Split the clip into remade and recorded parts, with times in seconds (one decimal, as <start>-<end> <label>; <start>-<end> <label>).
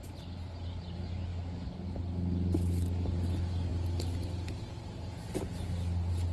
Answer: 0.0-1.3 recorded; 1.3-2.0 remade; 2.0-6.3 recorded